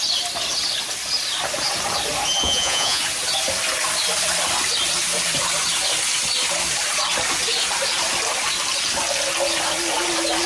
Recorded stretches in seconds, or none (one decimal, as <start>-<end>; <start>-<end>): 0.0-2.4; 3.0-10.5